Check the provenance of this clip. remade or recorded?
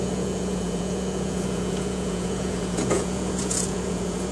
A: remade